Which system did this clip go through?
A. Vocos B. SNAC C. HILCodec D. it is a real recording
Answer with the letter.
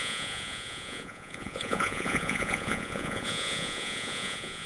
A